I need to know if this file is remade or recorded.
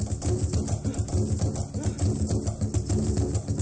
recorded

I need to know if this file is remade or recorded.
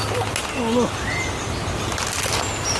recorded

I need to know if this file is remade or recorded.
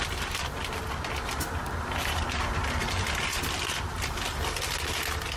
recorded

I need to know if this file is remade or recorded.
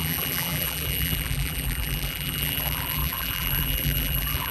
remade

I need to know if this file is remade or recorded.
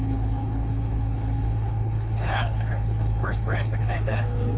remade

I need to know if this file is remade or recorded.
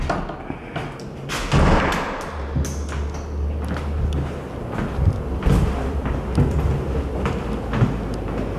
recorded